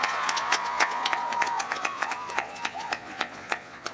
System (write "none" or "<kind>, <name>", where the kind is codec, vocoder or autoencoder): vocoder, Vocos